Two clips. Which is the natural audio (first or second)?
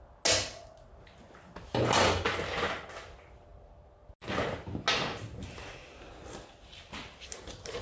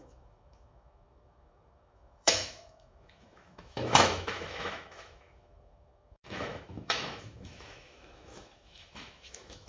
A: first